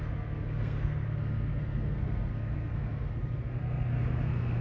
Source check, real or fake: fake